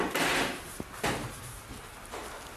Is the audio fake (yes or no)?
no